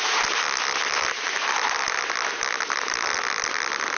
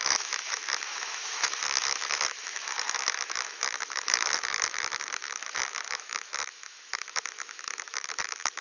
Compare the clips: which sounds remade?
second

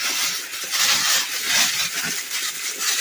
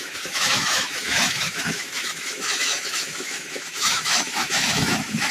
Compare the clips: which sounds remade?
second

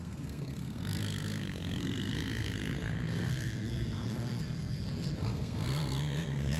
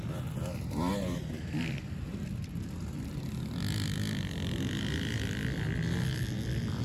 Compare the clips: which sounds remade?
first